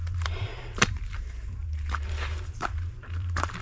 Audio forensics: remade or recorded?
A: remade